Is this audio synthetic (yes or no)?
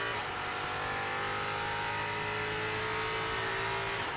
no